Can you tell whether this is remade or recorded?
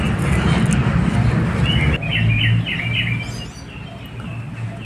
recorded